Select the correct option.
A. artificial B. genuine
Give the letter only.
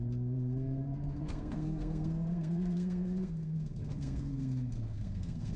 A